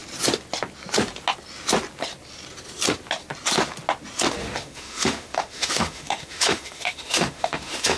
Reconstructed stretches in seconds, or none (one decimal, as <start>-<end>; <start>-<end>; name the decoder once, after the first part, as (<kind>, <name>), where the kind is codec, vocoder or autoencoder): 4.4-8.0 (autoencoder, DAC-VAE)